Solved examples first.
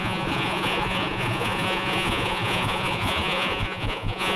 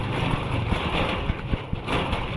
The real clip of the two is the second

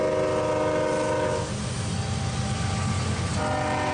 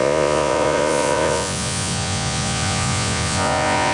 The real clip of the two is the first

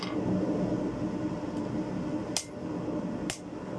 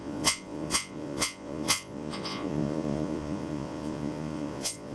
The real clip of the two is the first